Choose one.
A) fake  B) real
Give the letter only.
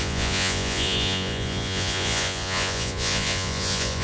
A